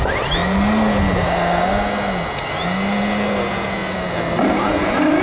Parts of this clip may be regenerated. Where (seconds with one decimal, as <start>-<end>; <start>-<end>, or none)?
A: none